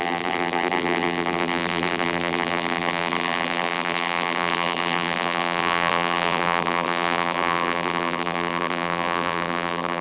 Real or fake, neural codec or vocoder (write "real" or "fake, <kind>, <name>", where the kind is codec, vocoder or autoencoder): fake, vocoder, BigVGAN v2